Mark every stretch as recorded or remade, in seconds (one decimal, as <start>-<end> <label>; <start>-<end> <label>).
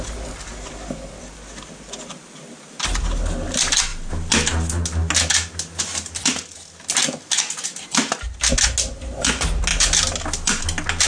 0.0-11.1 recorded